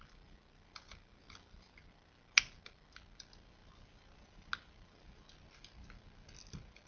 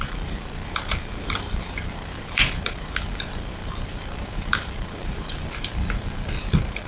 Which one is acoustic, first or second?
first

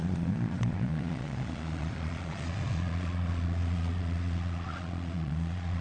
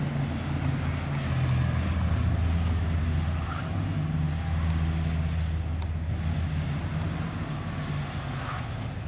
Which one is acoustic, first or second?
second